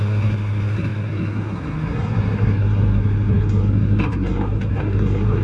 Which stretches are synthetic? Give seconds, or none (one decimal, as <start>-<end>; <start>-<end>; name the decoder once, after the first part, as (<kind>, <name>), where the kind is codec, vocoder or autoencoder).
0.0-5.4 (codec, SNAC)